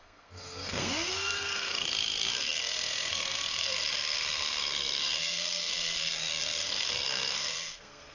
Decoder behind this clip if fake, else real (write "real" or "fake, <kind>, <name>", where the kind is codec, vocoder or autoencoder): fake, codec, SNAC